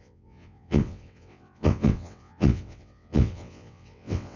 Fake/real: fake